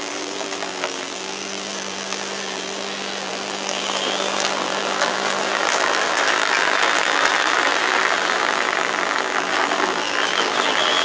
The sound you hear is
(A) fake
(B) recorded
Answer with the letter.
A